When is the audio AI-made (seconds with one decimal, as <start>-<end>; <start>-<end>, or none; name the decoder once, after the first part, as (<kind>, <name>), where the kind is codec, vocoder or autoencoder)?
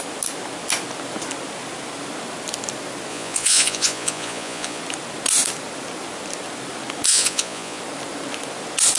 3.1-4.8 (vocoder, Vocos); 7.1-7.8